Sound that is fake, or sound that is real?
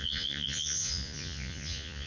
fake